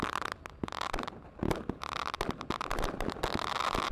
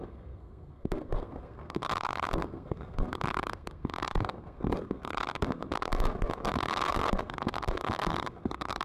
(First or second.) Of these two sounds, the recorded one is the first